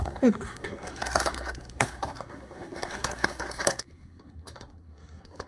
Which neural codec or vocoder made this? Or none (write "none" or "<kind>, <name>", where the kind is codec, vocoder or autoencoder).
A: codec, SNAC